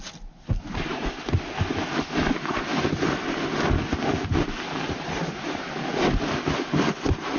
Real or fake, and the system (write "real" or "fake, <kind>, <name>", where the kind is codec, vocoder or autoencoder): real